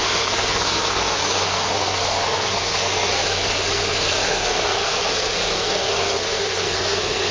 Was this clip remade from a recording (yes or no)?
yes